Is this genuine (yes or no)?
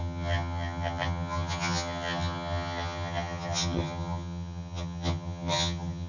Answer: no